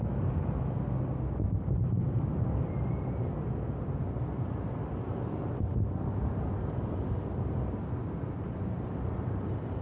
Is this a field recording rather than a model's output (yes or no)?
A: yes